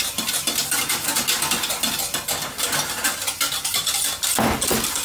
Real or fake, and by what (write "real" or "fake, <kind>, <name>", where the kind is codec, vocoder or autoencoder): real